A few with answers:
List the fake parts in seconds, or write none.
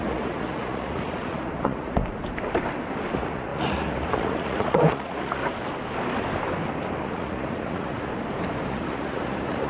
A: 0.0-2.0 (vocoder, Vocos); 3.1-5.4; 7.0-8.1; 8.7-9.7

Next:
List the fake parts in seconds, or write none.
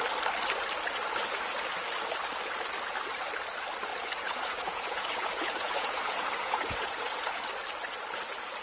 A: 3.9-7.5 (vocoder, Vocos)